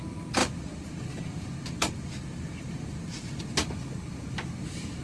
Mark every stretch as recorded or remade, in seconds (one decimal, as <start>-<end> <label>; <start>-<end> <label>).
0.0-0.4 recorded; 0.4-3.4 remade; 3.4-5.0 recorded